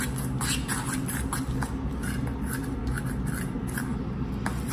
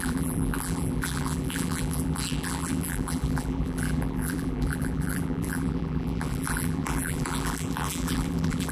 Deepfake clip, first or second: second